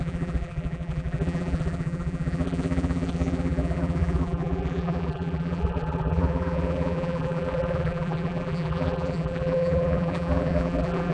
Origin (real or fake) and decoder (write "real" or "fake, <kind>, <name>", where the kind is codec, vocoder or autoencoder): fake, vocoder, BigVGAN v2